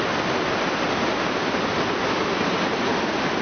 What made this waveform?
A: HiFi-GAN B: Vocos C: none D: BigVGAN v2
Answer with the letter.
C